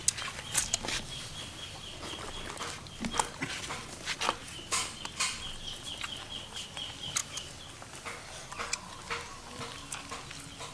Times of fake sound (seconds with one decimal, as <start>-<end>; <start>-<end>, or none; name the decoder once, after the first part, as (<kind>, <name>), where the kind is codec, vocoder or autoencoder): none